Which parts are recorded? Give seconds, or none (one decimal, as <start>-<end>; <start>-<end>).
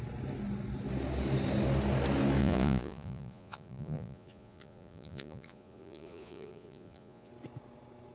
0.0-2.4; 7.3-8.1